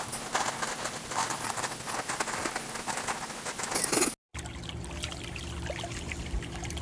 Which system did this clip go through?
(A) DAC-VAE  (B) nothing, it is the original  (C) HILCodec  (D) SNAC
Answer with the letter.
B